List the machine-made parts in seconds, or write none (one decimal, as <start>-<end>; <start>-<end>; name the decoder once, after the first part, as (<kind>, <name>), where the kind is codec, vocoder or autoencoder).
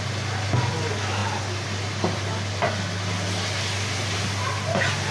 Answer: none